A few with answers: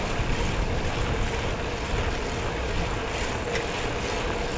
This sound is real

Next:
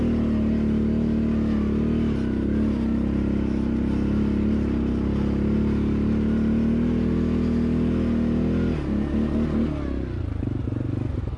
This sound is real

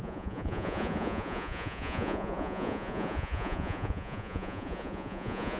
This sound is fake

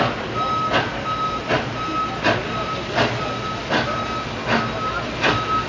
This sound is real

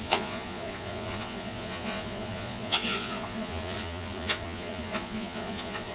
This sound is fake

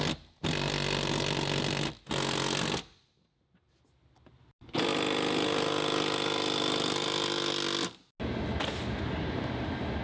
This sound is real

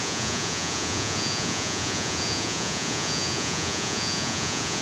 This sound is fake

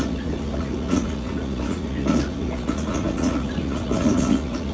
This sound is fake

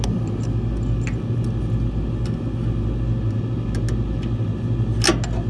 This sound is real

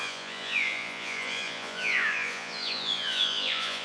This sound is fake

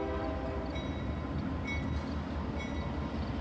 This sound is real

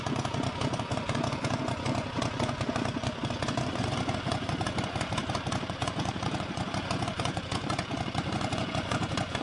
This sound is fake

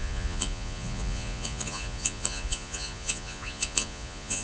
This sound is fake